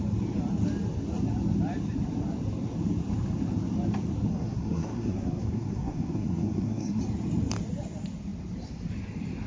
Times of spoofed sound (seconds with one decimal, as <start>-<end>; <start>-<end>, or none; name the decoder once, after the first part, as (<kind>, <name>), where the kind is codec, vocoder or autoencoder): 4.3-7.0 (codec, SNAC)